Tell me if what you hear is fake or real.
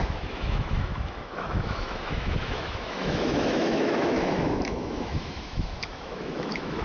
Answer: fake